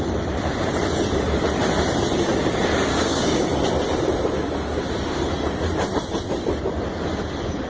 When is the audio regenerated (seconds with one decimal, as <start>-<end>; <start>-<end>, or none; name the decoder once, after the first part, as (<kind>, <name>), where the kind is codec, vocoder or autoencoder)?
2.9-3.5 (codec, DAC)